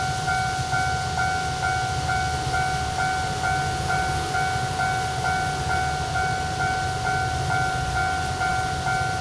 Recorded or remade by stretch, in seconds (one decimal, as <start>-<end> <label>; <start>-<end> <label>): 0.0-9.2 recorded